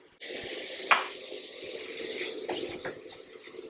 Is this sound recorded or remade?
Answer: recorded